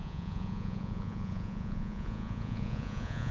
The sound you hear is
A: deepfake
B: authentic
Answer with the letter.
A